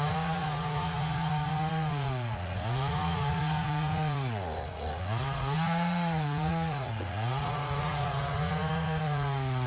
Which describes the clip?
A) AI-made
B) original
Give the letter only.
A